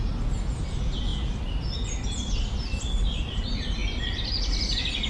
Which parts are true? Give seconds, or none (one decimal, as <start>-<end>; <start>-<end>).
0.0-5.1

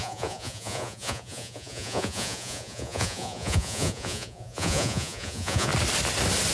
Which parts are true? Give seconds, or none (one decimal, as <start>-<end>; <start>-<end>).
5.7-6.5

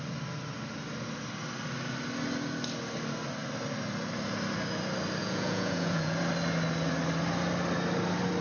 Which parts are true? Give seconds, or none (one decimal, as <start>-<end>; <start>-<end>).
0.0-5.2; 6.2-8.4